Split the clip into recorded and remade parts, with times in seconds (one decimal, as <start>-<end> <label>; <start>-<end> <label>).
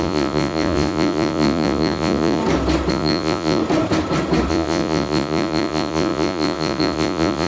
0.0-2.4 remade; 2.4-2.9 recorded; 2.9-3.6 remade; 3.6-4.5 recorded; 4.5-7.5 remade